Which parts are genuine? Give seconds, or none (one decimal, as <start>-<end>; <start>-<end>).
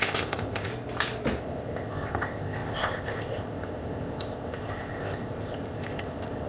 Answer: 0.7-1.4